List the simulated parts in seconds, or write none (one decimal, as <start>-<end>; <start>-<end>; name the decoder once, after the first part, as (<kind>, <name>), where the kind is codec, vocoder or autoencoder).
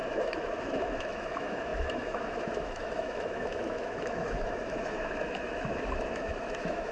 0.0-6.9 (autoencoder, DAC-VAE)